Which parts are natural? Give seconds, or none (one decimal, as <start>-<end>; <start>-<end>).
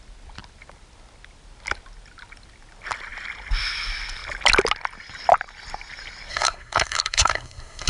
0.0-6.3